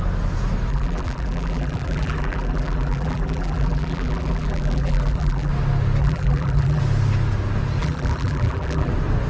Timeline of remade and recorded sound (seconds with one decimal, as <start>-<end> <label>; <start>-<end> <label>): 0.0-0.7 recorded; 0.7-5.5 remade; 5.5-6.0 recorded; 6.0-6.8 remade; 6.8-7.8 recorded; 7.8-8.9 remade; 8.9-9.3 recorded